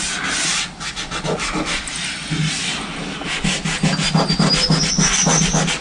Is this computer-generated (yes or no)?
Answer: no